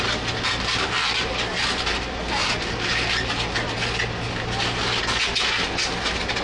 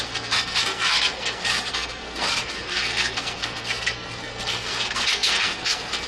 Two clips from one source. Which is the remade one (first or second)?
second